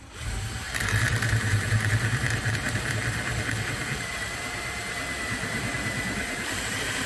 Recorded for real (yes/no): no